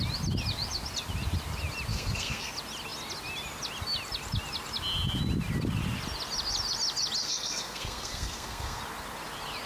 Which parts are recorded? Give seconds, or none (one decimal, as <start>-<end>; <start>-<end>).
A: 0.0-1.9; 2.5-7.2; 8.8-9.7